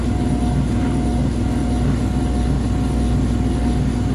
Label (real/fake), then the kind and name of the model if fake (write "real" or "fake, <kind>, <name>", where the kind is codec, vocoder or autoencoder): real